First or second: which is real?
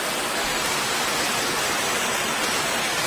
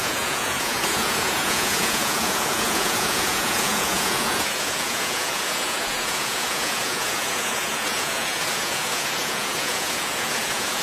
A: first